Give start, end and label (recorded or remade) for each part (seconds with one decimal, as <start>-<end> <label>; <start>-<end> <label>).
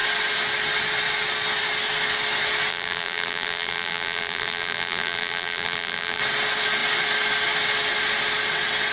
0.0-2.7 recorded; 2.7-6.2 remade; 6.2-8.9 recorded